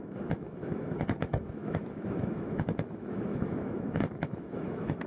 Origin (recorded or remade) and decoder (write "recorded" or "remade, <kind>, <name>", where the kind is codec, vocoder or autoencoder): remade, autoencoder, DAC-VAE